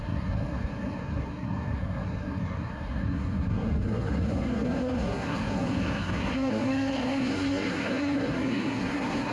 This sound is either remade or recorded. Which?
remade